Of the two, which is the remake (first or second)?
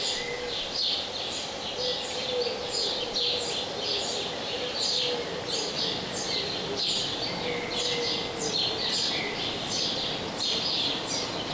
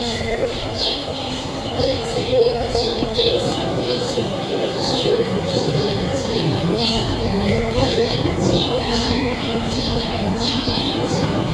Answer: second